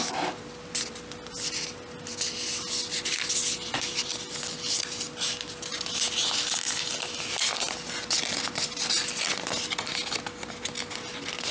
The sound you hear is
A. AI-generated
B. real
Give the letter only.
B